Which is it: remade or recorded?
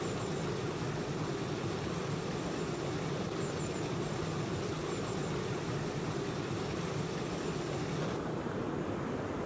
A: recorded